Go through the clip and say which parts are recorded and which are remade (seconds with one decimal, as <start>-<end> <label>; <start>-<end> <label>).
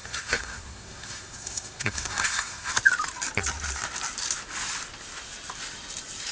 0.0-2.7 remade; 2.7-6.3 recorded